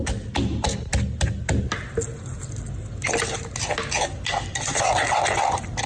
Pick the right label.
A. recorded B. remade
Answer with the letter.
A